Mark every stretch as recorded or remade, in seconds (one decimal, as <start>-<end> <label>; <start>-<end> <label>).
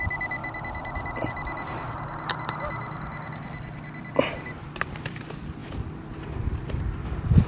0.0-7.5 recorded